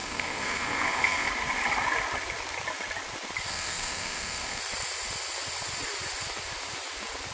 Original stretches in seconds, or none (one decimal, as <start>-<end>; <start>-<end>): 1.3-3.5; 4.6-7.3